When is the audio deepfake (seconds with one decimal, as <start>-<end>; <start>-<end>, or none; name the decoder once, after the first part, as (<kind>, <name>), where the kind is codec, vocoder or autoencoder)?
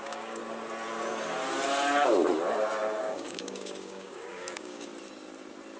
0.0-0.4 (codec, DAC); 3.0-4.9